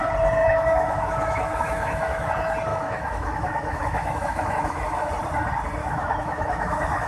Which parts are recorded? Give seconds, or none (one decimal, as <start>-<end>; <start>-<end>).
0.0-0.4; 2.3-2.7; 5.1-5.8